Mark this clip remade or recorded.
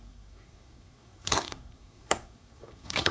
remade